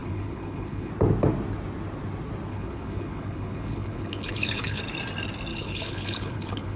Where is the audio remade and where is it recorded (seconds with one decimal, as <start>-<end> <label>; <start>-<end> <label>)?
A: 0.0-0.9 remade; 0.9-2.5 recorded; 2.5-4.8 remade; 4.8-5.5 recorded; 5.5-6.8 remade